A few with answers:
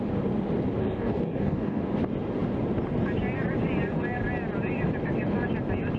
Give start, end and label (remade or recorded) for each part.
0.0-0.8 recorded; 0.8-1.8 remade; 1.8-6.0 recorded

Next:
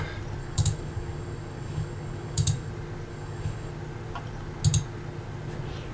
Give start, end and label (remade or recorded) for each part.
0.0-0.4 recorded; 0.4-2.7 remade; 2.7-3.1 recorded; 3.1-3.7 remade; 3.7-5.9 recorded

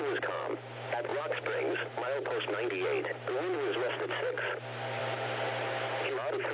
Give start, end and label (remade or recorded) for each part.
0.0-6.5 recorded

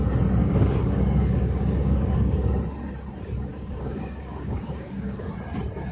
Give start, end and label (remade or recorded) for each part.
0.0-0.4 recorded; 0.4-2.6 remade; 2.6-3.5 recorded; 3.5-5.3 remade; 5.3-5.9 recorded

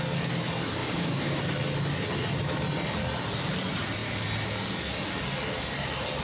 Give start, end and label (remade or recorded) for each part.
0.0-0.8 recorded; 0.8-1.5 remade; 1.5-6.2 recorded